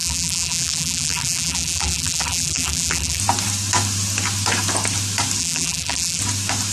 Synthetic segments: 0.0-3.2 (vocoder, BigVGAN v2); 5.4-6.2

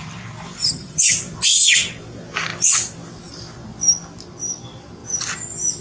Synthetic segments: 0.6-1.1 (vocoder, HiFi-GAN)

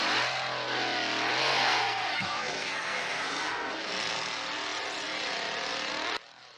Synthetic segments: 1.4-3.9 (codec, SNAC)

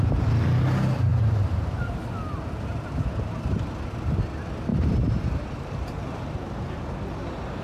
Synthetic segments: 1.1-1.8 (vocoder, BigVGAN v2); 4.7-6.9

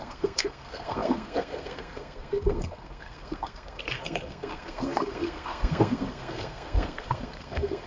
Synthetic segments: 0.0-7.9 (codec, SNAC)

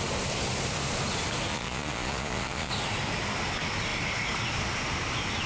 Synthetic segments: 1.5-2.7 (vocoder, Vocos)